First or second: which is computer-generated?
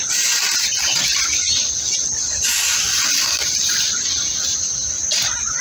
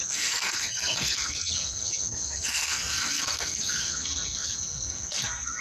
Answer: second